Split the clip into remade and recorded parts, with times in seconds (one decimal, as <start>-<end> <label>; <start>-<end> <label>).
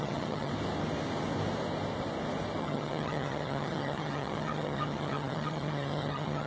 0.0-0.5 remade; 0.5-2.6 recorded; 2.6-6.5 remade